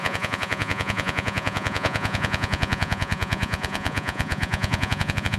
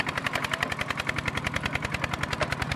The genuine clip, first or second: second